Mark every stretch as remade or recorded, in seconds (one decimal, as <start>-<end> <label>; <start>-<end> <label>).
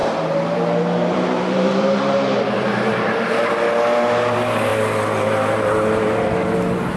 0.0-0.6 remade; 0.6-1.0 recorded; 1.0-3.5 remade; 3.5-7.0 recorded